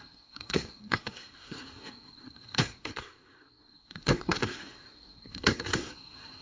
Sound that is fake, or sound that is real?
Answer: fake